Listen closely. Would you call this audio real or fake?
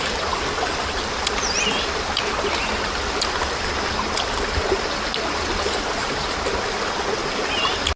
real